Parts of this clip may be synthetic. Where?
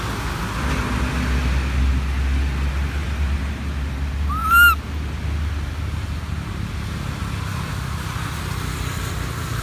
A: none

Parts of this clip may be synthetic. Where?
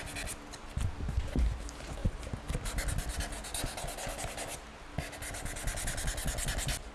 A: none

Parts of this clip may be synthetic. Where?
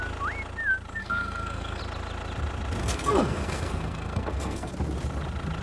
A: 1.0-1.8 (codec, SNAC); 2.8-4.7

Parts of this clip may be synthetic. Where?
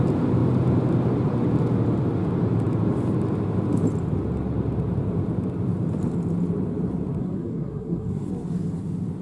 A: 7.2-8.3 (codec, SNAC)